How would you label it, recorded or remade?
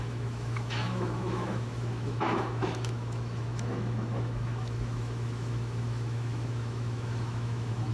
remade